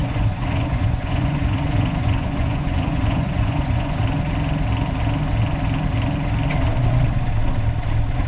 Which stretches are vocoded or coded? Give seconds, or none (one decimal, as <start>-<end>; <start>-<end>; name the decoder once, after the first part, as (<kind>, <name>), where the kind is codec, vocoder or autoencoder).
0.0-4.0 (vocoder, Vocos)